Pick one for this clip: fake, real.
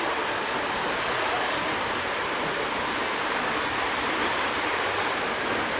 fake